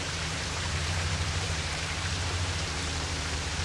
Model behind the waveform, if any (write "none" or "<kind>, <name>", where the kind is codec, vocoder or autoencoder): vocoder, BigVGAN v2